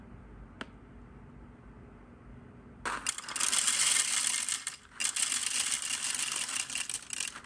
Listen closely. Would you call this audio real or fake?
real